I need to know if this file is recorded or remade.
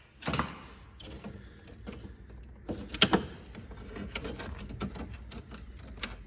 recorded